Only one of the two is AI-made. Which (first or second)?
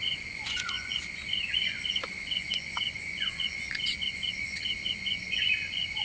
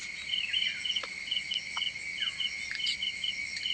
first